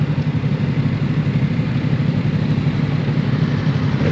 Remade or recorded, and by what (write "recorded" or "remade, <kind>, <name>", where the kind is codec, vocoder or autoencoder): recorded